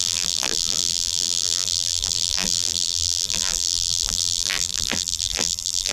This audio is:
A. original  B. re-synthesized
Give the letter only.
B